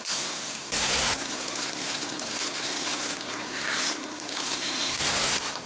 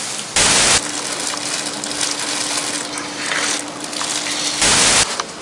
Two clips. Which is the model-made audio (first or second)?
first